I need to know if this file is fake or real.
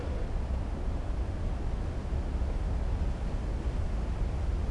real